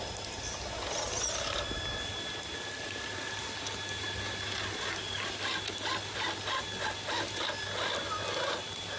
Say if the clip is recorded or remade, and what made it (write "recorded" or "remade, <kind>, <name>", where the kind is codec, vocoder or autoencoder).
recorded